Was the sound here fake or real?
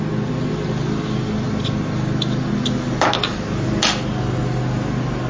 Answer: real